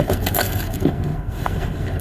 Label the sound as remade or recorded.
remade